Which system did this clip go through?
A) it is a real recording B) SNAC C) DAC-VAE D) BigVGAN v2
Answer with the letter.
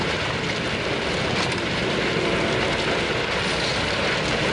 A